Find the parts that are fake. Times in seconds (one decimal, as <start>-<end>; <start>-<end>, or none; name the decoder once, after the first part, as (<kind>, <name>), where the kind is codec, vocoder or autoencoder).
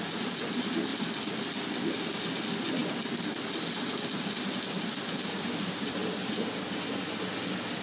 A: 6.0-7.2 (vocoder, BigVGAN v2)